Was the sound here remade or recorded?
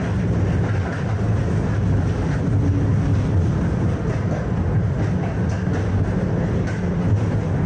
recorded